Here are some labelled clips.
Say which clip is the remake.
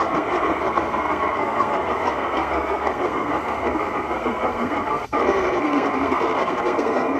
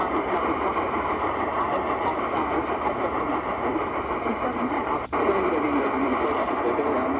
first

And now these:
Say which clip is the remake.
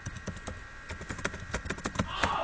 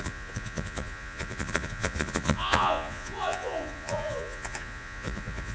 second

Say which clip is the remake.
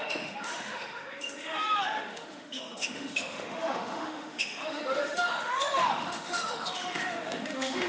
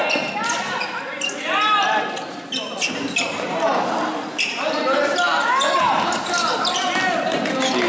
first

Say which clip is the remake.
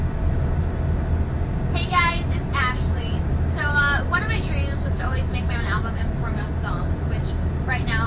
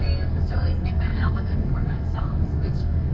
second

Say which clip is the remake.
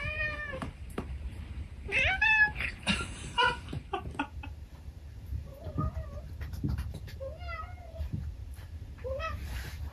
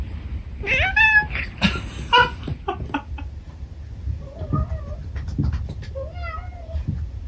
first